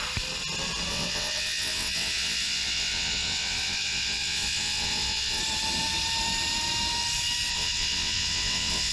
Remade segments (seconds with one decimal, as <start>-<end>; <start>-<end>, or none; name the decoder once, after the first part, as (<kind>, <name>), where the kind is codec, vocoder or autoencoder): 0.9-5.4 (vocoder, WaveNeXt); 7.5-8.9